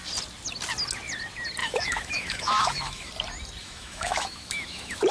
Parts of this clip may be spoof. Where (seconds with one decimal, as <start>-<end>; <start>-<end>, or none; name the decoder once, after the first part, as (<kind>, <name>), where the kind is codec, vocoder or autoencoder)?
1.6-3.1 (autoencoder, DAC-VAE); 3.6-5.1